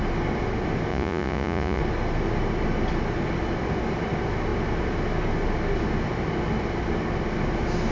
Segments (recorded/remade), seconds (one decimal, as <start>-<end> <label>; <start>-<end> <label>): 0.0-0.9 recorded; 0.9-1.8 remade; 1.8-7.9 recorded